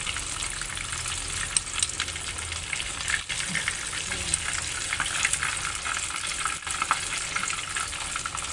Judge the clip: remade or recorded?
recorded